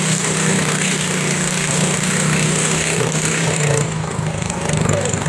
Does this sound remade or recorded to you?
remade